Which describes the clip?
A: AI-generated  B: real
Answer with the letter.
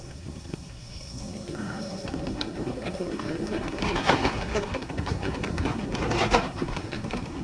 A